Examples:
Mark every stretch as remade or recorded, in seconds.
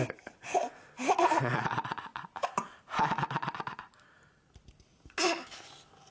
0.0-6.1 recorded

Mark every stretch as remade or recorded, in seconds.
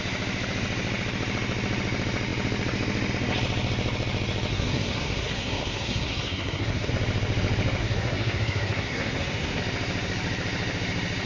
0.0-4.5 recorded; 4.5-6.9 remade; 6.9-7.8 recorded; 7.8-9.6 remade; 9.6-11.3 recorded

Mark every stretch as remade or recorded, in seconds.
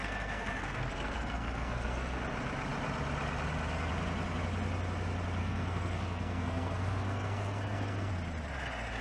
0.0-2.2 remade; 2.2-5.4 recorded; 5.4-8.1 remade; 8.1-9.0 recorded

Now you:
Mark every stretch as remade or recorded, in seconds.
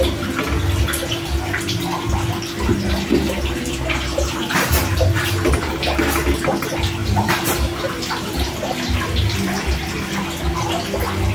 0.0-2.7 recorded; 2.7-6.0 remade; 6.0-7.0 recorded; 7.0-10.1 remade; 10.1-11.3 recorded